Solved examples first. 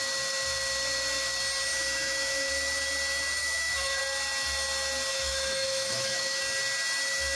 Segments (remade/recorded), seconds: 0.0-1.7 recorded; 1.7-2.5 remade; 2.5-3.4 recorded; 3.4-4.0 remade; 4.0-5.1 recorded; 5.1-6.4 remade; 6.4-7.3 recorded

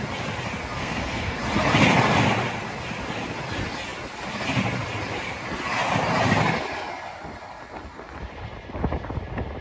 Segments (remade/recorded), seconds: 0.0-0.8 recorded; 0.8-1.4 remade; 1.4-9.6 recorded

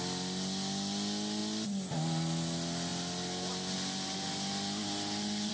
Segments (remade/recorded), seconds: 0.0-5.5 recorded

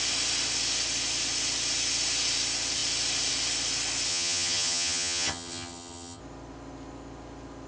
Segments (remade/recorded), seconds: 0.0-4.1 recorded; 4.1-6.2 remade; 6.2-7.7 recorded

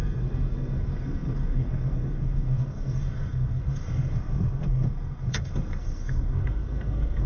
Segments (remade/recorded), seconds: 0.0-7.3 remade